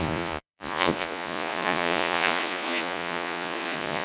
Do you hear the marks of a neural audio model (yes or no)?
yes